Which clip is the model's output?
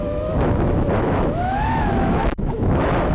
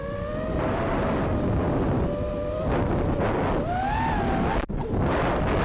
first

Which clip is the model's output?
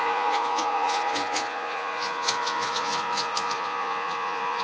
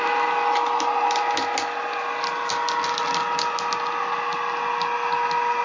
first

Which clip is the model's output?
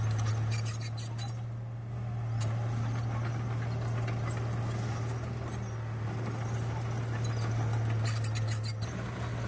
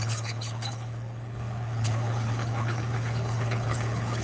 second